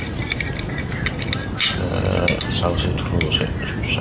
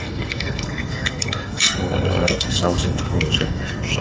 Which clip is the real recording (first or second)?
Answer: first